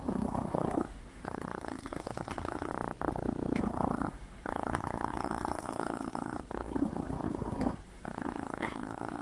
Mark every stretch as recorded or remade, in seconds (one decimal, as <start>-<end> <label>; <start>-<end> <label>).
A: 0.0-2.7 remade; 2.7-3.6 recorded; 3.6-9.2 remade